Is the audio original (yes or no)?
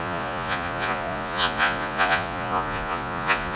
no